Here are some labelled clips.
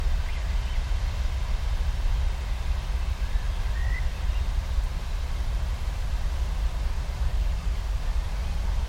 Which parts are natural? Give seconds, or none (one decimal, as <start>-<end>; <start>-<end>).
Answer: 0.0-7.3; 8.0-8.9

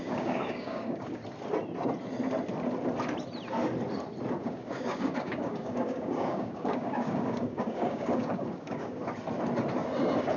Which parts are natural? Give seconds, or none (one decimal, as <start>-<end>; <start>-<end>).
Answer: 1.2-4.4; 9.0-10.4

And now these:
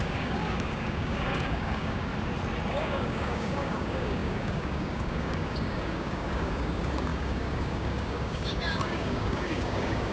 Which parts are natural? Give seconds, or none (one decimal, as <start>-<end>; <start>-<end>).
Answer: 2.1-2.7

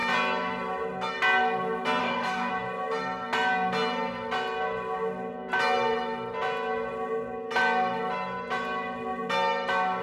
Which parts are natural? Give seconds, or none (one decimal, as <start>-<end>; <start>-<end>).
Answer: 0.0-2.0; 2.5-10.0